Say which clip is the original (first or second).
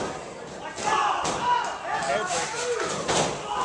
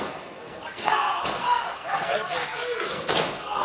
first